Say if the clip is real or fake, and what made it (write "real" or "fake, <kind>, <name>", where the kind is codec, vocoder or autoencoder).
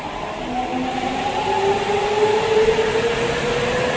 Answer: real